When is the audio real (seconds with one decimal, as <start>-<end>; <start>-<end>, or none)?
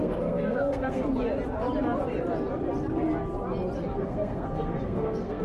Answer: 1.0-3.9